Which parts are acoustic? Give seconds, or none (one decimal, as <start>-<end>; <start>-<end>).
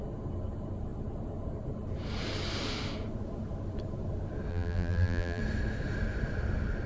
0.0-4.5; 5.4-6.9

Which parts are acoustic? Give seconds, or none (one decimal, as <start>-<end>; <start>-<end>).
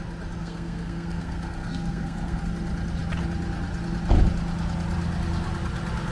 0.0-0.4; 2.4-6.1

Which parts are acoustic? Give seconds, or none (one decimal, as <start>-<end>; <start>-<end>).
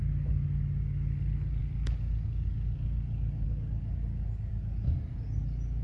0.0-5.8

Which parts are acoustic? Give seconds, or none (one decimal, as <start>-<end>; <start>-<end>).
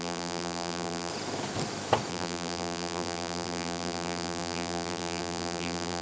1.1-2.1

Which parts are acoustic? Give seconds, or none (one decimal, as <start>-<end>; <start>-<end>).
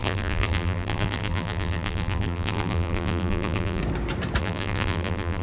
3.8-4.4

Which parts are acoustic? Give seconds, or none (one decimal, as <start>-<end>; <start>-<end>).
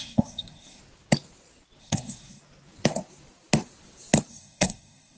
0.8-1.8; 2.4-4.3